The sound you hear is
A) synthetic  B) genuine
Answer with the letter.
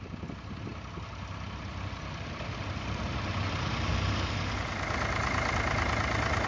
B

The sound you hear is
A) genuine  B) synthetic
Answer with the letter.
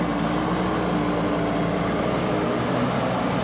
A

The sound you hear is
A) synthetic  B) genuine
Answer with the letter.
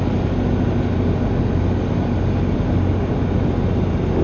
B